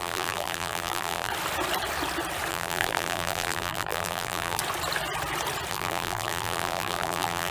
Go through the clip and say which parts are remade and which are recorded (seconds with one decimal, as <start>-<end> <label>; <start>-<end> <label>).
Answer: 0.0-1.3 remade; 1.3-2.5 recorded; 2.5-4.6 remade; 4.6-5.7 recorded; 5.7-7.5 remade